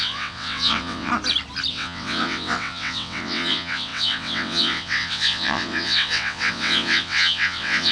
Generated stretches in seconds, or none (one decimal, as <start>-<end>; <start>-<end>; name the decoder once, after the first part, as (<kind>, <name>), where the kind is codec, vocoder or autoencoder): 0.0-1.1 (vocoder, WaveNeXt); 1.7-7.9